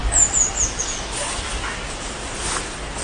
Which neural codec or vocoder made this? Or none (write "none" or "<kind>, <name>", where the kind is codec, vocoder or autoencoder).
none